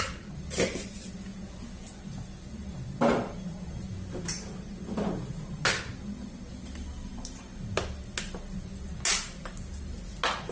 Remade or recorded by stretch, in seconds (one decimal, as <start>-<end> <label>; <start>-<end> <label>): 0.0-1.3 recorded; 1.3-1.9 remade; 1.9-10.5 recorded